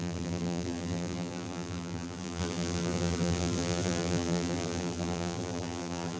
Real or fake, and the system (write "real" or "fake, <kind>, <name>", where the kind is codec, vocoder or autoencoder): fake, vocoder, BigVGAN v2